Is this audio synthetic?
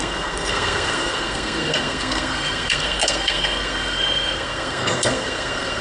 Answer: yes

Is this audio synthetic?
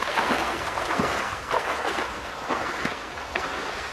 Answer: yes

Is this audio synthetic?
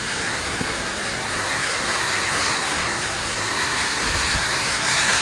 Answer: yes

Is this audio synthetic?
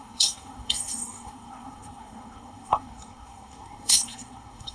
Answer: yes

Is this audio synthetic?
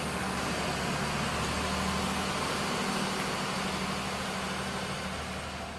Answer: no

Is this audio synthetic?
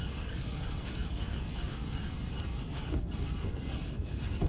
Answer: yes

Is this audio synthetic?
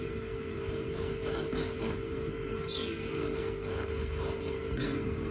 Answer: yes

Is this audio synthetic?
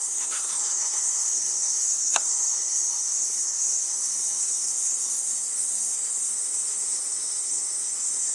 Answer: yes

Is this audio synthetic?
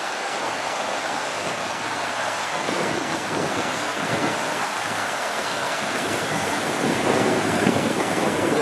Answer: yes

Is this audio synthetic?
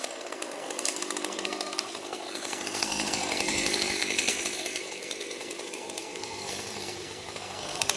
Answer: yes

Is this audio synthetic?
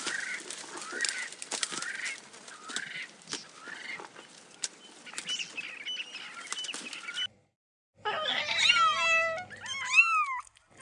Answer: no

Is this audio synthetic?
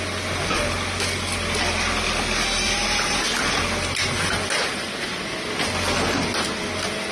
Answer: no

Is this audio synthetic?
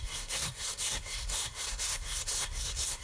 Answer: yes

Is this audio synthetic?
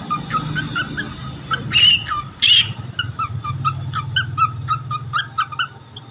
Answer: no